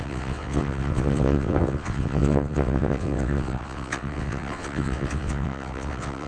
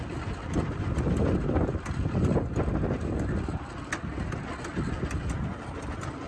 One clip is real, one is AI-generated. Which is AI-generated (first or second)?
first